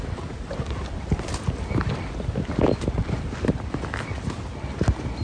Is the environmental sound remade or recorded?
recorded